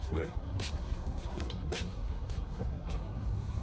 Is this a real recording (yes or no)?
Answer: no